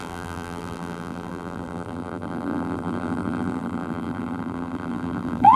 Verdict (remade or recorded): remade